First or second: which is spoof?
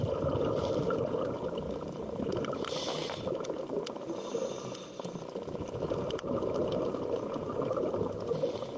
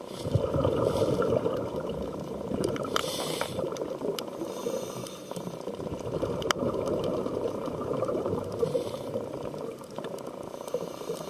second